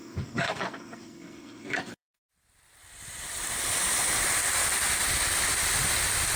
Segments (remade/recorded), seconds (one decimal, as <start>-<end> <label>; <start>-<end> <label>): 0.0-2.3 remade; 2.3-6.4 recorded

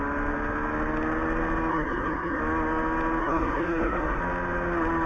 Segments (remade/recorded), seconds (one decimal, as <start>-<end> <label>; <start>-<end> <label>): 0.0-1.7 recorded; 1.7-2.4 remade; 2.4-3.2 recorded; 3.2-4.2 remade; 4.2-5.1 recorded